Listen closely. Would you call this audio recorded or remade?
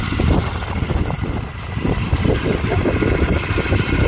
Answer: recorded